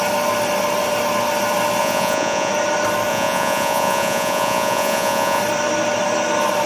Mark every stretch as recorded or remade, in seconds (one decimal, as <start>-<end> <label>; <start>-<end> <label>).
0.0-1.8 recorded; 1.8-2.5 remade; 2.5-3.1 recorded; 3.1-5.4 remade; 5.4-6.7 recorded